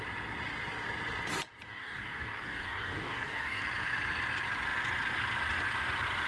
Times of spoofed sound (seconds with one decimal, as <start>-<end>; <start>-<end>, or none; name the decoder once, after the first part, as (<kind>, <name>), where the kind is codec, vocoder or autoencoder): 1.7-3.6 (codec, DAC)